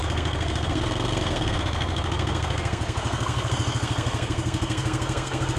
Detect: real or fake fake